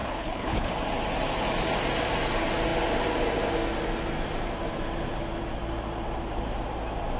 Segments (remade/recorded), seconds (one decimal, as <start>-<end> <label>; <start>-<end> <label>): 0.0-0.7 remade; 0.7-7.2 recorded